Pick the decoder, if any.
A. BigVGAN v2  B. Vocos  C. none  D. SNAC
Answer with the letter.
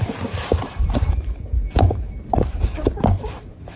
A